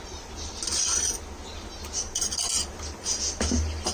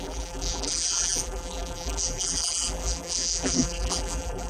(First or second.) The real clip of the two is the first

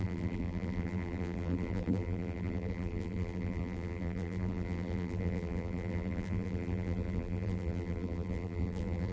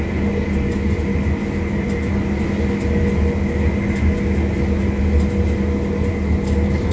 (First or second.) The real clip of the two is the second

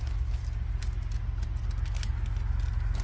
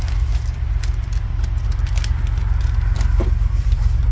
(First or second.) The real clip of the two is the first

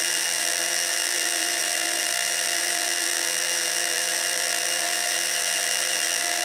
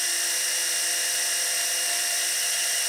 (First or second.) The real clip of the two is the second